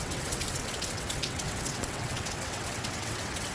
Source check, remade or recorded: remade